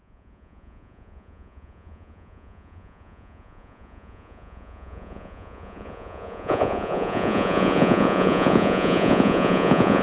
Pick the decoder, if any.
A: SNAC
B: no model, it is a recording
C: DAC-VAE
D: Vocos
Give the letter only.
D